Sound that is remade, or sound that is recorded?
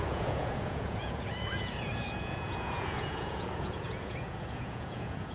remade